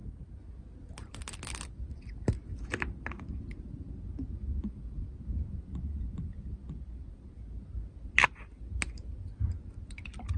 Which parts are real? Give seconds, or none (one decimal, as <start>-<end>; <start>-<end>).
0.0-10.4